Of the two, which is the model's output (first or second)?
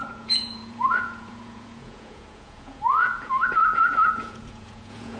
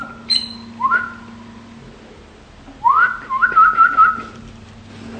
first